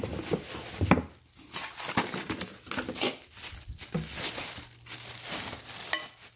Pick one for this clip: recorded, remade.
recorded